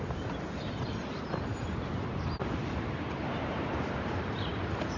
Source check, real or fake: fake